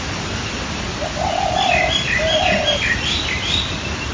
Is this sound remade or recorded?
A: remade